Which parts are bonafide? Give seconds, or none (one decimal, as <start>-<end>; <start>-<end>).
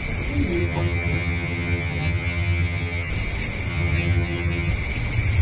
0.0-0.6; 3.1-3.7; 4.7-5.4